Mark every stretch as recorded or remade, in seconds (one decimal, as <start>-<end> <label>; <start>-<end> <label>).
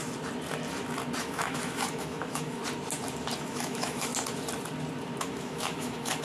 0.0-1.2 recorded; 1.2-2.6 remade; 2.6-3.4 recorded; 3.4-4.1 remade; 4.1-5.2 recorded; 5.2-6.2 remade